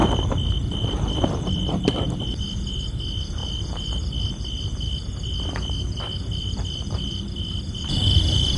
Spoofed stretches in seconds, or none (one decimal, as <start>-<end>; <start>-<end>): 0.0-2.4; 3.4-7.8